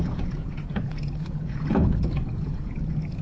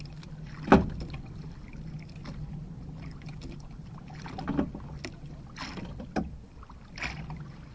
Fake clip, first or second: first